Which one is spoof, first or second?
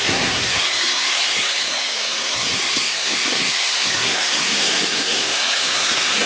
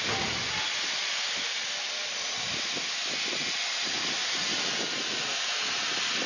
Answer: first